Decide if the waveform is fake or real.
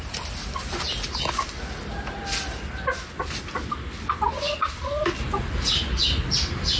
real